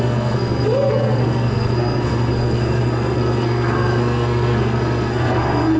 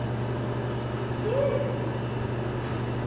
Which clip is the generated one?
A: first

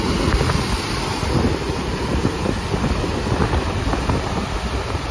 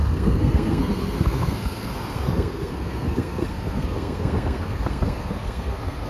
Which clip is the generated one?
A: second